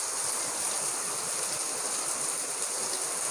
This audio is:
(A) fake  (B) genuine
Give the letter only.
B